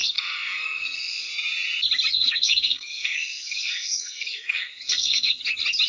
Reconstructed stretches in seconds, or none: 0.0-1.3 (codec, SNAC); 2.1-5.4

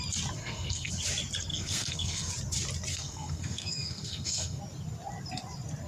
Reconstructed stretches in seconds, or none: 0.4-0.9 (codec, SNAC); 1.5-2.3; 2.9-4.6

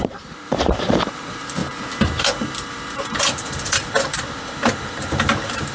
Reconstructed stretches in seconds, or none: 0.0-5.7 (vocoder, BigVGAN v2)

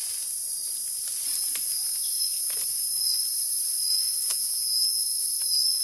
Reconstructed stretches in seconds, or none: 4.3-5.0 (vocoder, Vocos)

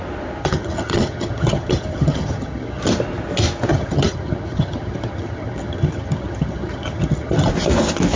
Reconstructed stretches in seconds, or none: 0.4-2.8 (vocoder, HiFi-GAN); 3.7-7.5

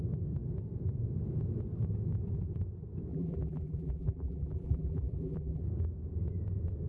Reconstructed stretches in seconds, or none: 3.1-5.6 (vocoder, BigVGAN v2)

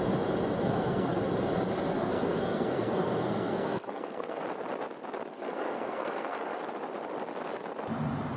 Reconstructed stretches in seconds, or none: 0.6-1.2 (codec, SNAC); 1.9-4.4; 5.3-6.6